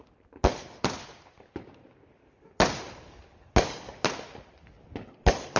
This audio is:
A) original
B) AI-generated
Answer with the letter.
A